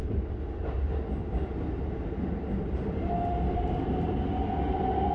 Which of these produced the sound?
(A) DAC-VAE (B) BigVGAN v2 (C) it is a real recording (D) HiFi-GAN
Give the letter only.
C